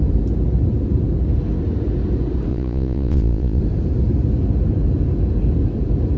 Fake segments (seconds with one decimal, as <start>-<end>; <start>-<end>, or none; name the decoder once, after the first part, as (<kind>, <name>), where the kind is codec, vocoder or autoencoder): 2.5-3.6 (vocoder, Vocos)

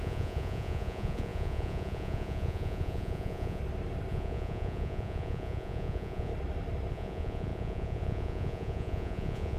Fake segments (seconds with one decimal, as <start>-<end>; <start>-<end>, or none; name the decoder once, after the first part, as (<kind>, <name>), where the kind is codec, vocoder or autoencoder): 0.0-3.6 (vocoder, Vocos); 4.1-6.3; 6.9-9.6

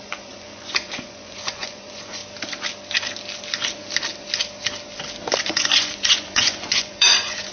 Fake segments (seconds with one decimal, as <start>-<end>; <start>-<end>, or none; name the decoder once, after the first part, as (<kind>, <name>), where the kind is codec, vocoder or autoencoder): 0.0-2.2 (vocoder, Vocos); 5.4-7.5

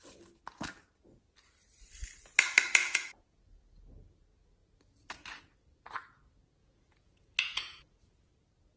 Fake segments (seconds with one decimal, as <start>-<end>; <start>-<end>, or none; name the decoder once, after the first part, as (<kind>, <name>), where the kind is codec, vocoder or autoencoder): 2.8-3.4 (vocoder, Vocos); 6.6-8.3

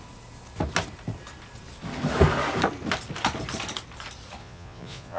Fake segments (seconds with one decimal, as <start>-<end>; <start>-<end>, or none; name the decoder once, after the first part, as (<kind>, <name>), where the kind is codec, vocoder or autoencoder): 4.4-5.2 (vocoder, Vocos)

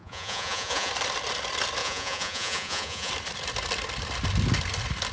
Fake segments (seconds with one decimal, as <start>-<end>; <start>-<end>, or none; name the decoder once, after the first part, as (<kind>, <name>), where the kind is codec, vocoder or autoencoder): 0.0-0.9 (vocoder, Vocos); 1.8-3.1